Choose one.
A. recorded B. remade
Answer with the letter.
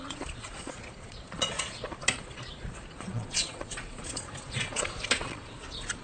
B